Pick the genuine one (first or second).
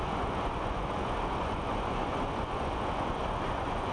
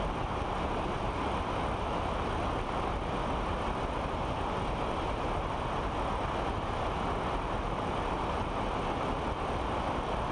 second